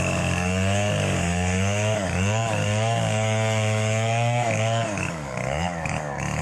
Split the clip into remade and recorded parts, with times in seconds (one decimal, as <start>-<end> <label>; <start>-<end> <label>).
0.0-6.4 remade